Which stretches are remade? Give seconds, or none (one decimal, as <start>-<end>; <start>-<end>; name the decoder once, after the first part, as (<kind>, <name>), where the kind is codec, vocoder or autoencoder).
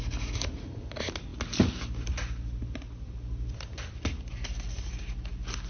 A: none